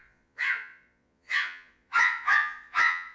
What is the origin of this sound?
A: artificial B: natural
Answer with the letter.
A